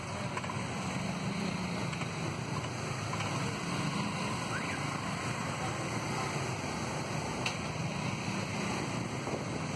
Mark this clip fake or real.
real